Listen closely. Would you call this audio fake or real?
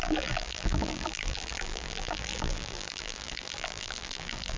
fake